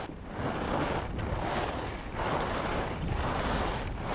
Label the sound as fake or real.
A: real